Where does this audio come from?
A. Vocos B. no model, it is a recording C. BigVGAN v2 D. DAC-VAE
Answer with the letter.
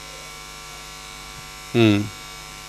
D